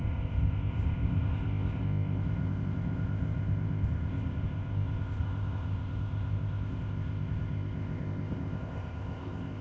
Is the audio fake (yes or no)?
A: yes